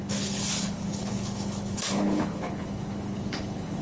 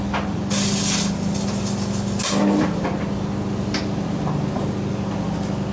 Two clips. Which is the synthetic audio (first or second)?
first